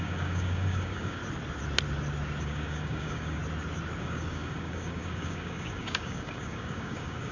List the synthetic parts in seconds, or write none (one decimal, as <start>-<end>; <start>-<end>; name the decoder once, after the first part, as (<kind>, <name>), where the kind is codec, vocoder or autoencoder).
0.0-1.2 (codec, DAC); 2.4-3.4; 4.0-7.3